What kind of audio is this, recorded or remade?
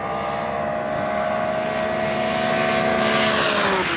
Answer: recorded